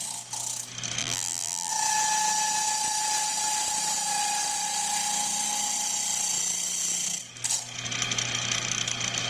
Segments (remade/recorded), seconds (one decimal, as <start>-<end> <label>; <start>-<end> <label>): 0.0-1.0 recorded; 1.0-1.7 remade; 1.7-9.3 recorded